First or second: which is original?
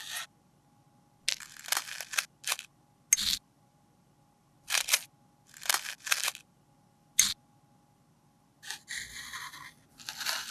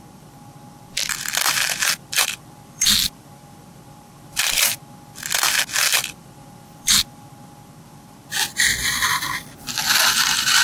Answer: first